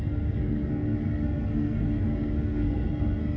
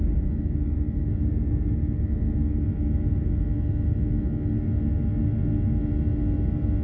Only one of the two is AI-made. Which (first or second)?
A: first